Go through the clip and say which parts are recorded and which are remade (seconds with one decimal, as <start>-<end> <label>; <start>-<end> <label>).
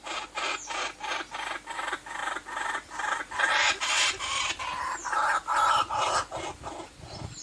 0.0-7.4 recorded